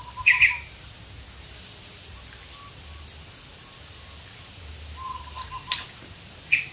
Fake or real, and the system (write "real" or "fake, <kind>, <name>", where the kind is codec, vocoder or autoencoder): real